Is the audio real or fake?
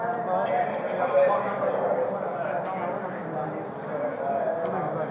real